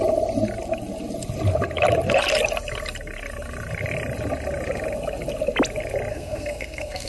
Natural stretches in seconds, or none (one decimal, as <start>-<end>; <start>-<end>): 0.0-6.1